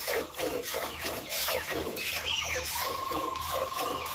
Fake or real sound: fake